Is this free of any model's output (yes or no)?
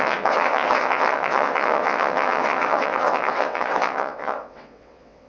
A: no